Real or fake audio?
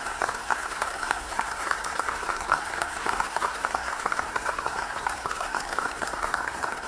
fake